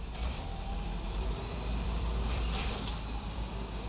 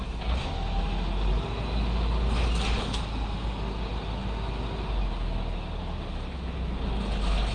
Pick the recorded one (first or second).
second